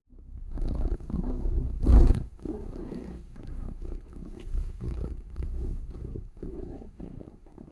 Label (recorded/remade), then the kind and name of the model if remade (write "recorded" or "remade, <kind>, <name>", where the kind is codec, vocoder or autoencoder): remade, codec, SNAC